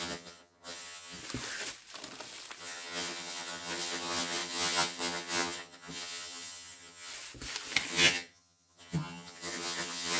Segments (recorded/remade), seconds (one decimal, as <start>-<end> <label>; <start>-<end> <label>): 0.0-1.2 remade; 1.2-2.6 recorded; 2.6-7.1 remade; 7.1-7.9 recorded; 7.9-10.2 remade

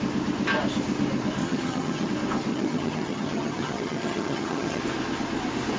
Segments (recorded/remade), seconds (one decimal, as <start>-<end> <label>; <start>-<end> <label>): 0.0-1.4 recorded; 1.4-2.1 remade; 2.1-2.5 recorded; 2.5-4.8 remade; 4.8-5.8 recorded

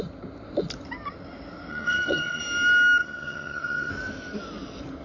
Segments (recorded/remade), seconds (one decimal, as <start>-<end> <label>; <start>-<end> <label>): 0.0-1.7 recorded; 1.7-2.4 remade; 2.4-3.0 recorded; 3.0-3.9 remade; 3.9-5.0 recorded